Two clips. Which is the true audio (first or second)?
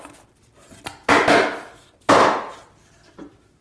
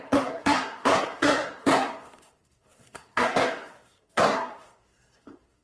first